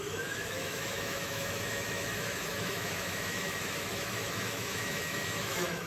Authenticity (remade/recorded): remade